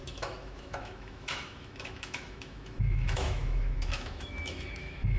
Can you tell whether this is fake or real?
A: fake